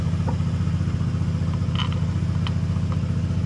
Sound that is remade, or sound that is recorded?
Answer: recorded